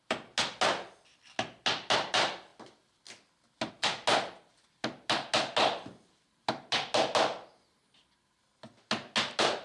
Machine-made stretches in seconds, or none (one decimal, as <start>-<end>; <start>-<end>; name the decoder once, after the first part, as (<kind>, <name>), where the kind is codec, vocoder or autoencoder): none